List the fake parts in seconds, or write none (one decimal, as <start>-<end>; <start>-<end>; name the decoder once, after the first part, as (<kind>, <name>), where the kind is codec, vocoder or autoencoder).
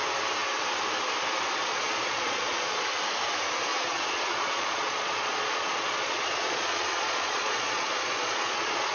1.7-2.8 (vocoder, Vocos); 3.7-8.9